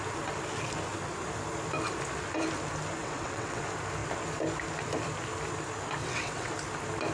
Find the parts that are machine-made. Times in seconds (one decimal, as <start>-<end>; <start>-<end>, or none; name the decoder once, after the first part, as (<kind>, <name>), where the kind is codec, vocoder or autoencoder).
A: 3.0-3.6 (vocoder, WaveNeXt); 6.0-6.5